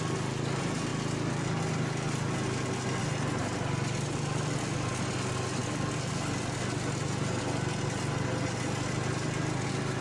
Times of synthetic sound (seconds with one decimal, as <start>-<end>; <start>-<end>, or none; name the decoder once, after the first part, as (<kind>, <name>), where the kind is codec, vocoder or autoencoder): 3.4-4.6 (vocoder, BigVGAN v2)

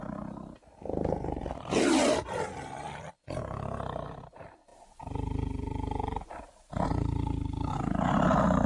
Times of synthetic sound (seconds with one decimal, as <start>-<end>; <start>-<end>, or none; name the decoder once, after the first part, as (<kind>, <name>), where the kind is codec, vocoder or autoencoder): none

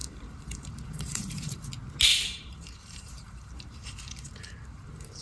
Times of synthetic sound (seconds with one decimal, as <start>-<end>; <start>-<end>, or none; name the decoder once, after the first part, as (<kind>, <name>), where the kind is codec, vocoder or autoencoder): 0.0-1.7 (vocoder, BigVGAN v2); 2.1-5.2

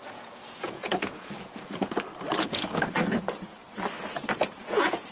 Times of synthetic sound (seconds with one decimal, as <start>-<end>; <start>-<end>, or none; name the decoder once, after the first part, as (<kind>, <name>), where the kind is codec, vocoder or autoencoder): 0.0-2.1 (vocoder, Vocos); 3.2-3.6; 4.1-5.1

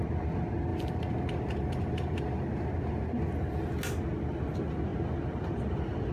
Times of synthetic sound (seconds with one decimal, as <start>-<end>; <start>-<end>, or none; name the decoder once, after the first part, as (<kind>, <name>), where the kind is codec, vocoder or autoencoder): 0.7-3.1 (vocoder, BigVGAN v2)

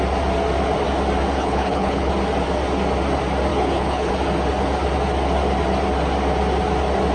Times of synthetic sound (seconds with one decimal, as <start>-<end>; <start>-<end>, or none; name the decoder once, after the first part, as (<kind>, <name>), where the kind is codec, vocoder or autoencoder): 1.4-2.1 (codec, HILCodec); 3.5-4.1